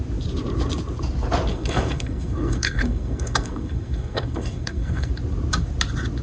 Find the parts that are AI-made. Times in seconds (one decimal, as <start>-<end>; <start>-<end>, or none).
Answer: 1.5-5.1